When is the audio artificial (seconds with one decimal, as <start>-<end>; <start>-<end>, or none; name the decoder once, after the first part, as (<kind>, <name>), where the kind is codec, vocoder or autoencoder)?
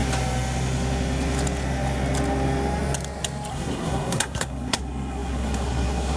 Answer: 3.5-6.2 (codec, SNAC)